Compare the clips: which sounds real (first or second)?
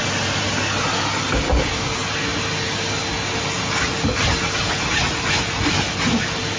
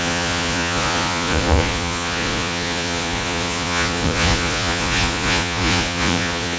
first